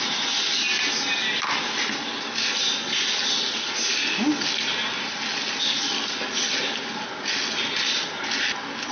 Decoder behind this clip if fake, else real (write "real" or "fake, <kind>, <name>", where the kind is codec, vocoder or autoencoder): real